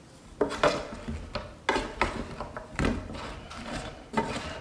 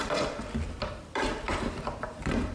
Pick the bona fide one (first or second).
first